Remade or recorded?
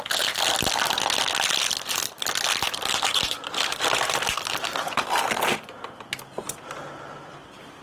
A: recorded